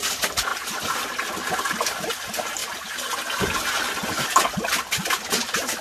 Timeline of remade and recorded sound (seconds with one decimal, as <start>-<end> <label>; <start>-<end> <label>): 0.0-0.5 recorded; 0.5-1.5 remade; 1.5-5.8 recorded